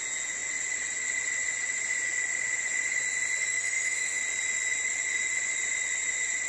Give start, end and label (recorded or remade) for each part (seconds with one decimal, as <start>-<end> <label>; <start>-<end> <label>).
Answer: 0.0-3.5 recorded; 3.5-4.2 remade; 4.2-6.5 recorded